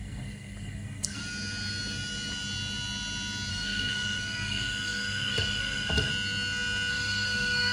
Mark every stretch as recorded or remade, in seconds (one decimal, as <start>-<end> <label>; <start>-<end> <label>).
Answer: 0.0-1.2 remade; 1.2-3.5 recorded; 3.5-6.1 remade; 6.1-6.9 recorded; 6.9-7.7 remade